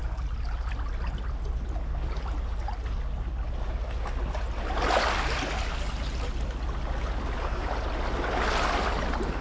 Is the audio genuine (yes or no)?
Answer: yes